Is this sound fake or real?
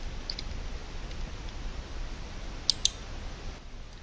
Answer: real